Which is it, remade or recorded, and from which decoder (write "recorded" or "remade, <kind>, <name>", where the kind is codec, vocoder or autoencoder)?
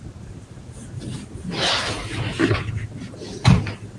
recorded